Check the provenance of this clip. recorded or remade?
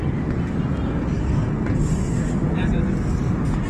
recorded